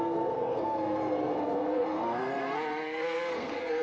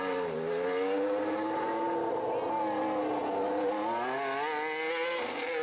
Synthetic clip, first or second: first